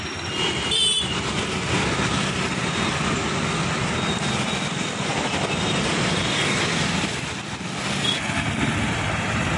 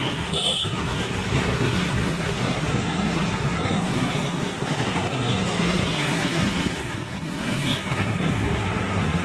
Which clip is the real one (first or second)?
first